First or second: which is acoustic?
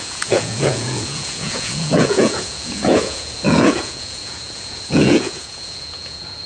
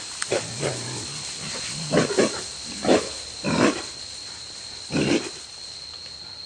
second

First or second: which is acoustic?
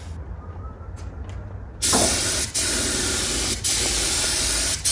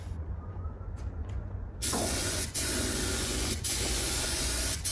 first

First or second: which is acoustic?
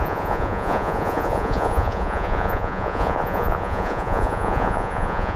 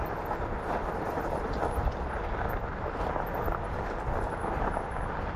second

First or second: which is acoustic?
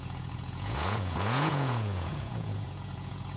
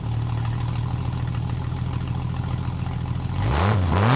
second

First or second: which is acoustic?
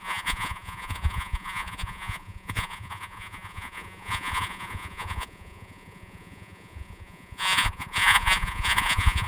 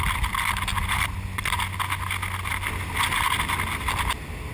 second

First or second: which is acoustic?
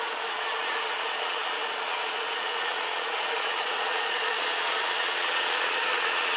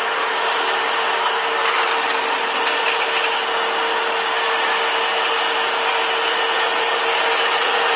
second